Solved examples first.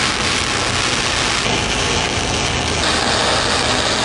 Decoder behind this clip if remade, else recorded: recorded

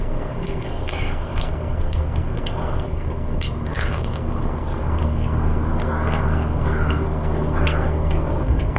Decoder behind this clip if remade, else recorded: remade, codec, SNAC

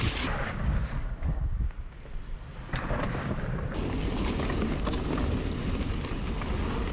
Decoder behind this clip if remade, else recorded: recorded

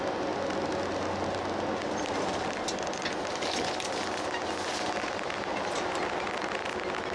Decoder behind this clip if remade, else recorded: recorded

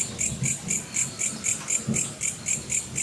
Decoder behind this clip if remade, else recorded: recorded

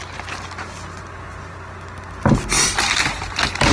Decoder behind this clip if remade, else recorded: recorded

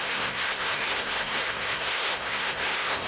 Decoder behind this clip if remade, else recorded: remade, codec, SNAC